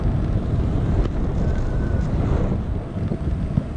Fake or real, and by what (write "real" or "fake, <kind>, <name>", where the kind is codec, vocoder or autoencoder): real